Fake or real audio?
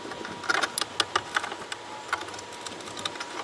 real